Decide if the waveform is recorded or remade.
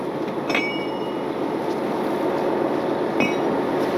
recorded